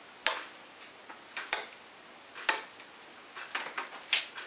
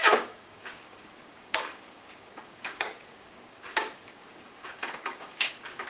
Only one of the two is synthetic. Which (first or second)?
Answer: second